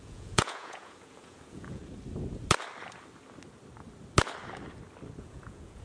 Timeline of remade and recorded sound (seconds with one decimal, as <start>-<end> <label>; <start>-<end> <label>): 0.0-1.8 remade; 1.8-5.2 recorded; 5.2-5.8 remade

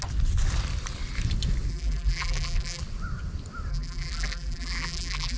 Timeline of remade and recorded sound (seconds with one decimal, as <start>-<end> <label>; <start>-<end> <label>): 0.0-1.7 recorded; 1.7-2.8 remade; 2.8-3.7 recorded; 3.7-5.4 remade

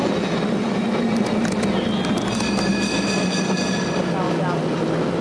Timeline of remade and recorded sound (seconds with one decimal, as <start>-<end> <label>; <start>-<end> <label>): 0.0-5.2 recorded

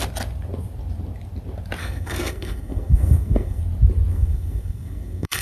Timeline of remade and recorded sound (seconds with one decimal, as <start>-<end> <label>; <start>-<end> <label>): 0.0-1.8 recorded; 1.8-3.6 remade; 3.6-4.1 recorded; 4.1-5.4 remade

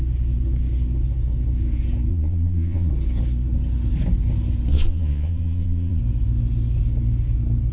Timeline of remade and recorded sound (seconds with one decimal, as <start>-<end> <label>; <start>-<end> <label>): 0.0-2.1 recorded; 2.1-2.9 remade; 2.9-4.7 recorded; 4.7-6.0 remade; 6.0-7.7 recorded

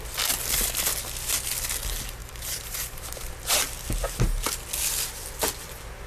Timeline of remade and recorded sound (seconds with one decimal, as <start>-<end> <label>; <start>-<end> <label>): 0.0-2.2 recorded; 2.2-3.0 remade; 3.0-6.1 recorded